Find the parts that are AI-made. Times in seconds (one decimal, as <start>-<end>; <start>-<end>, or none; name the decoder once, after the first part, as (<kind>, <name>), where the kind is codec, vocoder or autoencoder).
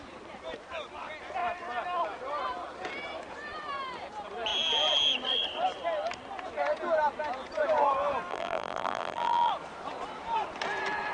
8.3-9.5 (vocoder, BigVGAN v2)